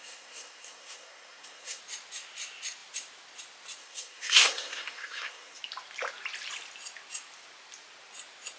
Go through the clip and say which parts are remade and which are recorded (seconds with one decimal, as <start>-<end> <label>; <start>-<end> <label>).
0.0-1.8 remade; 1.8-3.8 recorded; 3.8-5.6 remade; 5.6-8.6 recorded